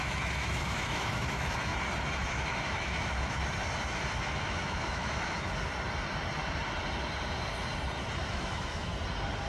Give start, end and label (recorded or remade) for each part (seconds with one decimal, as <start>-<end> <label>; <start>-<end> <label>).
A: 0.0-1.7 remade; 1.7-2.3 recorded; 2.3-3.4 remade; 3.4-4.2 recorded; 4.2-5.5 remade; 5.5-8.3 recorded; 8.3-8.9 remade; 8.9-9.5 recorded